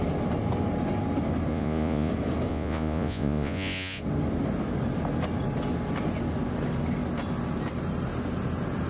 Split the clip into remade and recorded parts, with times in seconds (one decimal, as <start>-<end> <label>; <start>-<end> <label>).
0.0-1.5 recorded; 1.5-2.1 remade; 2.1-2.5 recorded; 2.5-4.0 remade; 4.0-8.9 recorded